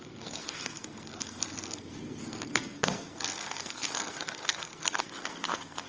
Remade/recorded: remade